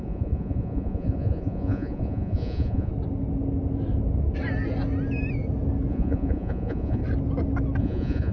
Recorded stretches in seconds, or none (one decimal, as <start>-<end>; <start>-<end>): 2.9-5.9; 7.0-7.8